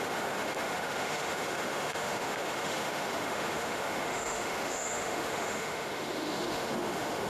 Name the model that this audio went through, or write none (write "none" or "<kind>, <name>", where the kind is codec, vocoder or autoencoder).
autoencoder, DAC-VAE